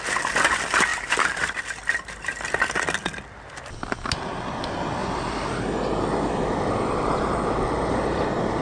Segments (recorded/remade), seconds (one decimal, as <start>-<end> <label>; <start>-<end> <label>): 0.0-0.9 recorded; 0.9-1.6 remade; 1.6-5.0 recorded; 5.0-5.6 remade; 5.6-8.6 recorded